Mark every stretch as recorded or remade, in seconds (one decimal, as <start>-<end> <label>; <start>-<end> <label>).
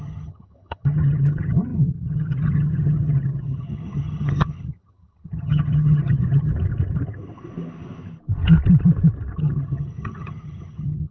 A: 0.0-6.5 remade; 6.5-9.4 recorded; 9.4-11.1 remade